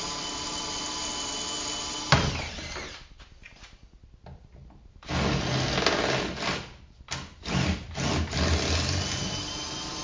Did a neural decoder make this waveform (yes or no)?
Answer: no